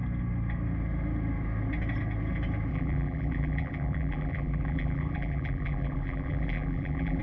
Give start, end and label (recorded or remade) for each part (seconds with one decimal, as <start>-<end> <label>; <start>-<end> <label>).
0.0-2.7 recorded; 2.7-7.2 remade

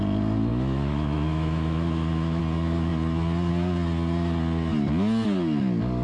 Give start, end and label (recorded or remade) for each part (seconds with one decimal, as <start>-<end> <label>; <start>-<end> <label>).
0.0-0.5 recorded; 0.5-2.4 remade; 2.4-6.0 recorded

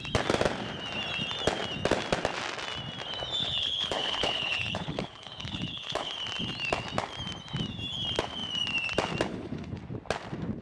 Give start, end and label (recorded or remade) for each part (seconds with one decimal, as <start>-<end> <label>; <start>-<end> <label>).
0.0-3.4 recorded; 3.4-6.1 remade; 6.1-9.3 recorded; 9.3-9.8 remade; 9.8-10.6 recorded